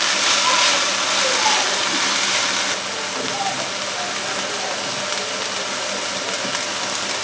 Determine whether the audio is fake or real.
real